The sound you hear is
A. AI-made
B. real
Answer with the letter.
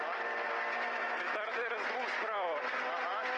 B